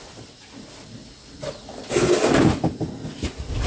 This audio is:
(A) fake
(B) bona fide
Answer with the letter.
B